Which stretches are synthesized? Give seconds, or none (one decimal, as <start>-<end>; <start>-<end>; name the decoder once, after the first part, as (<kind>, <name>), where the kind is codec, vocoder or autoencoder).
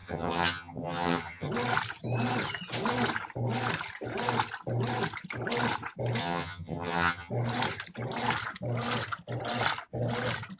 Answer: 0.0-1.5 (vocoder, HiFi-GAN); 6.2-7.3